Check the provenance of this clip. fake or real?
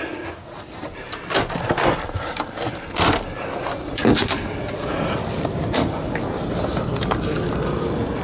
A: real